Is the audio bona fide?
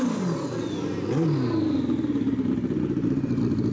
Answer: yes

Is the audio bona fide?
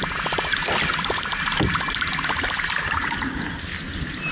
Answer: yes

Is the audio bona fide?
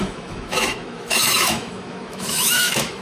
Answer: no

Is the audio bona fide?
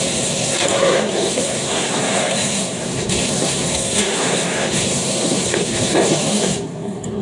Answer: no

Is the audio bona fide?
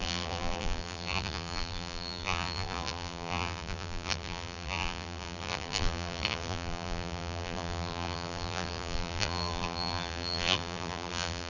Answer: no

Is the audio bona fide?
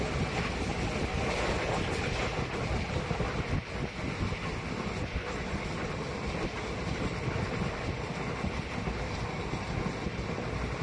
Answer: yes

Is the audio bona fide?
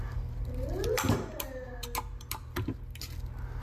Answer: yes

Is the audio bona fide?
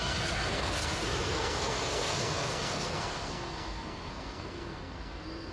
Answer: no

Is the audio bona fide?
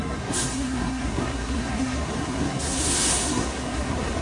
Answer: no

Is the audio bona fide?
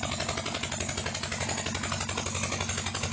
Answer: yes